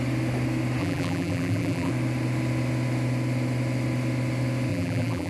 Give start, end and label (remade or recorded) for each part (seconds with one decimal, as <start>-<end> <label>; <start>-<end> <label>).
0.0-0.8 recorded; 0.8-1.9 remade; 1.9-4.7 recorded; 4.7-5.3 remade